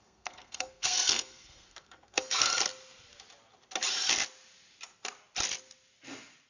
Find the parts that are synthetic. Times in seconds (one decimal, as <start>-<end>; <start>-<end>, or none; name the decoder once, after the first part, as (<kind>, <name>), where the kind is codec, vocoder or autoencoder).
0.0-2.5 (codec, SNAC)

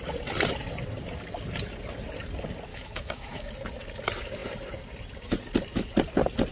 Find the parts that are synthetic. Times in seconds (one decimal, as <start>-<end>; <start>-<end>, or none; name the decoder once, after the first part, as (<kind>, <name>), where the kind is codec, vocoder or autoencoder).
2.7-3.5 (autoencoder, DAC-VAE)

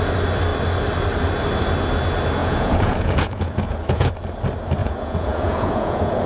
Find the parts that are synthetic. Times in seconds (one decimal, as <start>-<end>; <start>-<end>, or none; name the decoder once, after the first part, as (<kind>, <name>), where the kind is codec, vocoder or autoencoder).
2.4-4.1 (vocoder, Vocos); 4.8-6.3

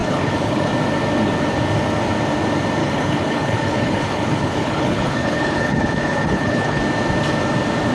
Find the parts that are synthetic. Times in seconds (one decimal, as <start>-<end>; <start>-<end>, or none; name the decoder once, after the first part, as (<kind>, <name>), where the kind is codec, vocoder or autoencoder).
0.0-0.7 (codec, HILCodec); 2.8-6.8

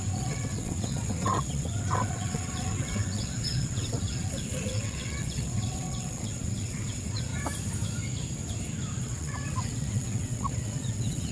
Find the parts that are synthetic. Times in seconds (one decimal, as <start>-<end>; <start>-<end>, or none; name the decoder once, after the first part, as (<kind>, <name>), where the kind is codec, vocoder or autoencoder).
0.0-7.3 (vocoder, WaveNeXt); 9.0-11.3